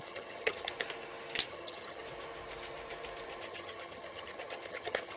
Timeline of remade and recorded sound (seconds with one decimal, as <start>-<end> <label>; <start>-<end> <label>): 0.0-0.7 remade; 0.7-1.5 recorded; 1.5-2.0 remade; 2.0-3.4 recorded; 3.4-5.2 remade